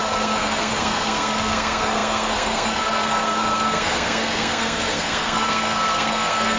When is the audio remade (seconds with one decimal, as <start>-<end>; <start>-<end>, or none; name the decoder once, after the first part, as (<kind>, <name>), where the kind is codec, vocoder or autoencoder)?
0.0-6.6 (codec, SNAC)